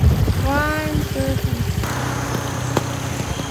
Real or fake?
real